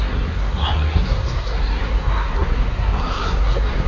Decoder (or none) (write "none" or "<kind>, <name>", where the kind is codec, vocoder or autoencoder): codec, SNAC